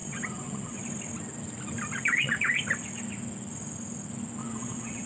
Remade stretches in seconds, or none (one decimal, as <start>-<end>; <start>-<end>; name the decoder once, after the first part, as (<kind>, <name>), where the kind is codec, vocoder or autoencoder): 0.0-0.8 (vocoder, WaveNeXt); 2.0-2.6; 4.4-5.1